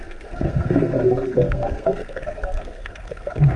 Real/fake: fake